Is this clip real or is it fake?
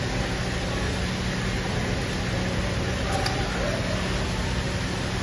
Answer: real